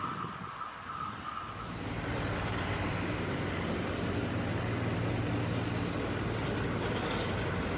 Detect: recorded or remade recorded